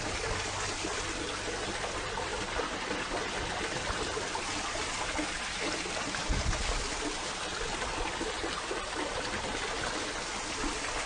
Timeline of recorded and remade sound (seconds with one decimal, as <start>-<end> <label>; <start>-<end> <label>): 0.0-11.1 recorded